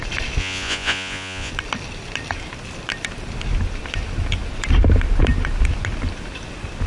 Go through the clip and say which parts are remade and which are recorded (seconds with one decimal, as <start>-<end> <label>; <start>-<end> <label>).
0.0-0.4 recorded; 0.4-1.5 remade; 1.5-6.9 recorded